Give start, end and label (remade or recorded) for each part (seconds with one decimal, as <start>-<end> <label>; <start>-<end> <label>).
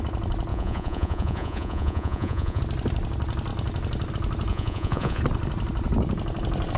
0.0-0.5 recorded; 0.5-2.6 remade; 2.6-4.5 recorded; 4.5-5.2 remade; 5.2-6.8 recorded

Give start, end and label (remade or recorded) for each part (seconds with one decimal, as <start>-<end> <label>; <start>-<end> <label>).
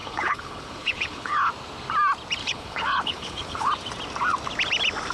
0.0-1.5 remade; 1.5-2.4 recorded; 2.4-3.7 remade; 3.7-5.1 recorded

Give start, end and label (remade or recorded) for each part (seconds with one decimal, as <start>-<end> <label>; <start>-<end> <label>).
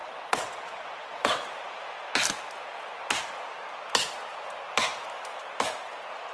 0.0-1.6 remade; 1.6-6.3 recorded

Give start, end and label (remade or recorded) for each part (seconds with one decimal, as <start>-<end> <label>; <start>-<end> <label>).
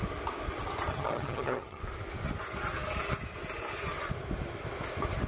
0.0-0.9 recorded; 0.9-1.8 remade; 1.8-5.3 recorded